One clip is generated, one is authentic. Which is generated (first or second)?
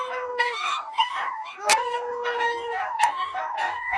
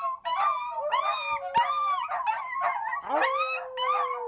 first